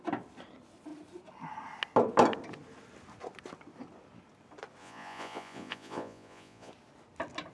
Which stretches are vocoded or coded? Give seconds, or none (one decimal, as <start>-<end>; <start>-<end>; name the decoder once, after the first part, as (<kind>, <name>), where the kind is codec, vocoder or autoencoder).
4.8-6.7 (vocoder, Vocos)